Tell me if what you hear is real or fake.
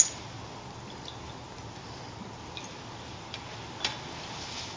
real